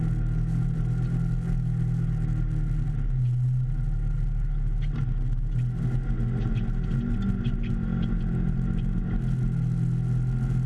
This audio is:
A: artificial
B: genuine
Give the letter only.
B